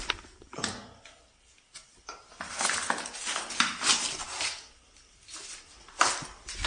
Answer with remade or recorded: recorded